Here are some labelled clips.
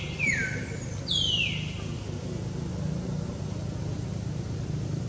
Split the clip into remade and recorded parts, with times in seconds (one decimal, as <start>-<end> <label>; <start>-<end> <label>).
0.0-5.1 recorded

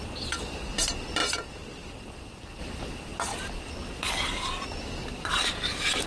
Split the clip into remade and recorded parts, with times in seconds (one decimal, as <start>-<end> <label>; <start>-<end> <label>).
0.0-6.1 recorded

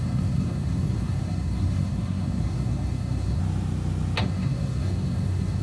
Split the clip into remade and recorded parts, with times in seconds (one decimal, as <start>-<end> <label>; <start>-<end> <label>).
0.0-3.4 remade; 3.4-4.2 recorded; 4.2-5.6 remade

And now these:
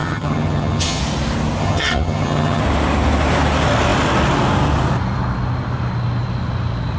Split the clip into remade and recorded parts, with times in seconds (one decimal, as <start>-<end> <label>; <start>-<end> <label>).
0.0-1.0 remade; 1.0-1.6 recorded; 1.6-2.6 remade; 2.6-7.0 recorded